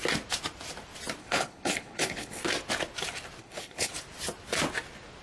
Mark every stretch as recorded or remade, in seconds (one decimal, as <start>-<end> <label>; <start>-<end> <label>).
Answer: 0.0-1.2 recorded; 1.2-2.4 remade; 2.4-3.4 recorded; 3.4-3.9 remade; 3.9-5.2 recorded